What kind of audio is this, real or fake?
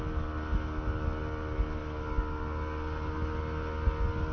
real